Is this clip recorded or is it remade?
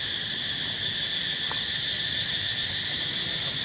recorded